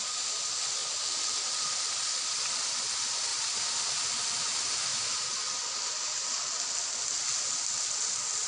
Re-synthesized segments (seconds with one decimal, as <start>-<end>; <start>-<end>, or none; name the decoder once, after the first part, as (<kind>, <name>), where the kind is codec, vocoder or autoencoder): none